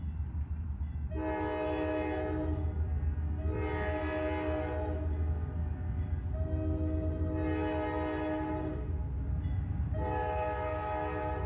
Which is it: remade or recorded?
recorded